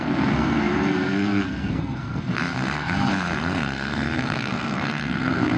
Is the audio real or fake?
fake